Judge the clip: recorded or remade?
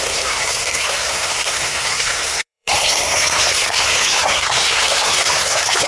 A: remade